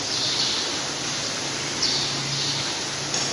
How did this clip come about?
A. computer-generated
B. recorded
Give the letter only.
B